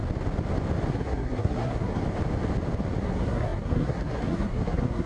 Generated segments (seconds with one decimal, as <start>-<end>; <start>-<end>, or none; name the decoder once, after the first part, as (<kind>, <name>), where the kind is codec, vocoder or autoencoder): 0.9-2.0 (codec, SNAC); 3.0-5.1